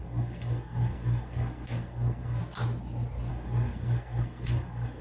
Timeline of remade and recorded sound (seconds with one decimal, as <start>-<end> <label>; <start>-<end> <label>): 0.0-2.4 remade; 2.4-3.3 recorded; 3.3-5.0 remade

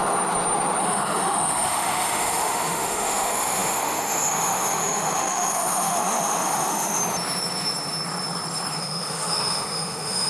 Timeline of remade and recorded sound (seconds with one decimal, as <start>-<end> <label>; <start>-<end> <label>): 0.0-0.8 recorded; 0.8-7.0 remade; 7.0-8.8 recorded; 8.8-10.3 remade

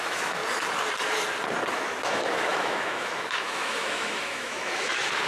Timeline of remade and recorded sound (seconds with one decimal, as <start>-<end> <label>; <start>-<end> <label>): 0.0-0.4 remade; 0.4-1.7 recorded; 1.7-5.3 remade

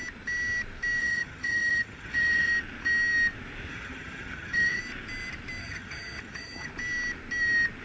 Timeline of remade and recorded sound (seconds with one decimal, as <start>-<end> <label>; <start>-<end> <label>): 0.0-1.0 recorded; 1.0-2.5 remade; 2.5-3.7 recorded; 3.7-4.8 remade; 4.8-5.6 recorded; 5.6-6.7 remade; 6.7-7.8 recorded

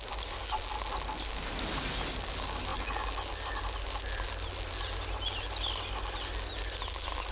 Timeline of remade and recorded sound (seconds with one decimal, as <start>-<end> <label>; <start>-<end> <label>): 0.0-7.3 recorded

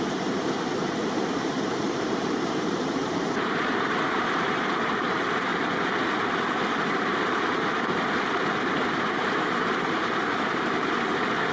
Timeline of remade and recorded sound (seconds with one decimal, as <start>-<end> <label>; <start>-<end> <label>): 0.0-5.5 remade; 5.5-6.8 recorded; 6.8-11.5 remade

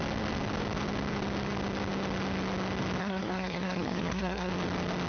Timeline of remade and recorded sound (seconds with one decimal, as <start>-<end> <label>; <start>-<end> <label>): 0.0-3.0 recorded; 3.0-4.5 remade; 4.5-5.1 recorded

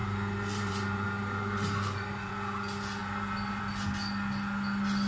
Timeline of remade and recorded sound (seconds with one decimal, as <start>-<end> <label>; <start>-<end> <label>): 0.0-2.3 remade; 2.3-3.0 recorded; 3.0-3.6 remade; 3.6-5.1 recorded